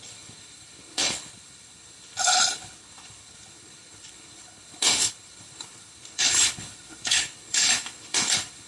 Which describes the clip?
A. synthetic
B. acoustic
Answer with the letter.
A